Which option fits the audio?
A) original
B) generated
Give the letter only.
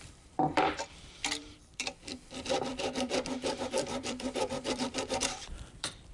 B